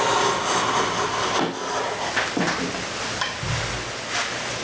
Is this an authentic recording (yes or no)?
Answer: yes